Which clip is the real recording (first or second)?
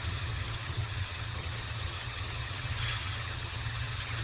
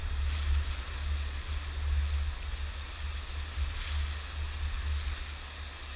second